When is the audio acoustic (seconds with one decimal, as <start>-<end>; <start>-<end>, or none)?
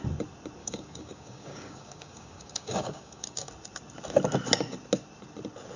0.0-0.6; 3.5-5.8